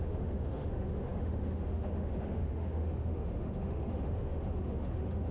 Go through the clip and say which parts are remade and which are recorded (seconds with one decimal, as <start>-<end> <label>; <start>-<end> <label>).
0.0-5.3 remade